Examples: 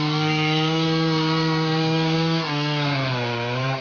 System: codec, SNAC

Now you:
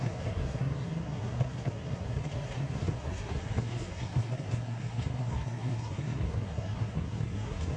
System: codec, SNAC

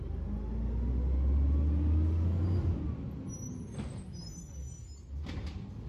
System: none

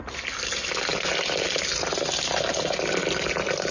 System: none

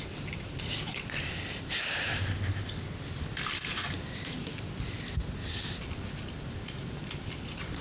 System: none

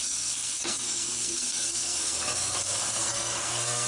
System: codec, SNAC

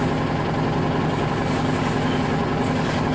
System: none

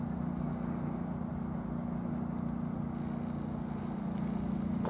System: none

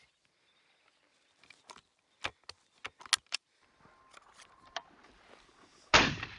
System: none